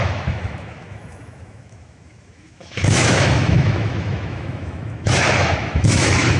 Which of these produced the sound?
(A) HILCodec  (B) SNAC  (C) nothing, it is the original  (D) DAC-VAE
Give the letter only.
D